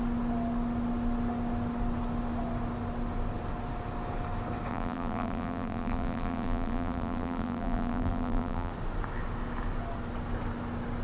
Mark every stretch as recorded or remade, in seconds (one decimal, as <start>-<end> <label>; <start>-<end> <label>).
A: 0.0-4.7 recorded; 4.7-8.7 remade; 8.7-11.0 recorded